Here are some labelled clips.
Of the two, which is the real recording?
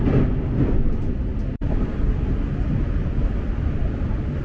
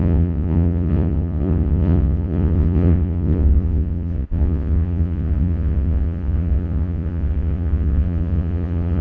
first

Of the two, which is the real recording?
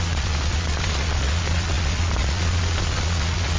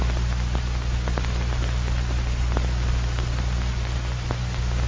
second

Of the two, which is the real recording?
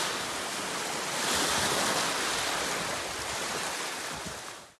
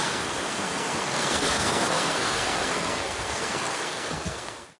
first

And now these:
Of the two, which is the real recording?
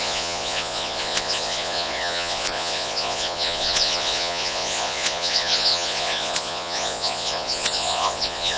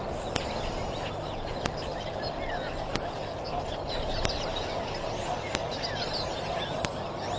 second